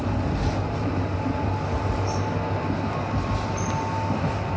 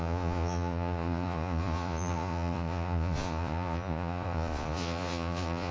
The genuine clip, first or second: first